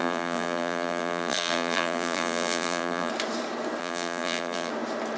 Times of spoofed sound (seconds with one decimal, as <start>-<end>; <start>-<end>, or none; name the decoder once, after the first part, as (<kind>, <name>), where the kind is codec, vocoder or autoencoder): 0.0-3.1 (vocoder, BigVGAN v2); 3.8-4.7